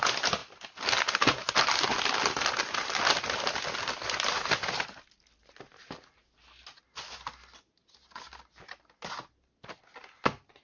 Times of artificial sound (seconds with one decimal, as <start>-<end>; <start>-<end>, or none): none